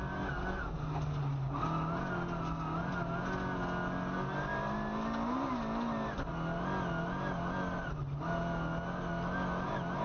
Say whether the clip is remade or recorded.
recorded